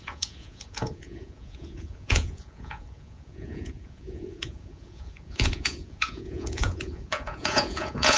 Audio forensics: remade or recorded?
remade